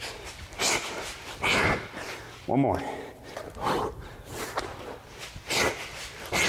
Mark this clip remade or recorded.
recorded